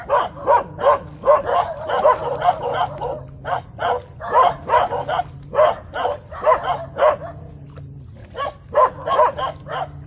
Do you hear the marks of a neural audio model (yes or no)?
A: no